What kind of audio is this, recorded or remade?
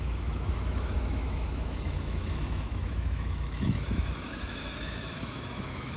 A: remade